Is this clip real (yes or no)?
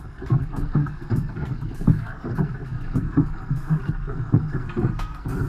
no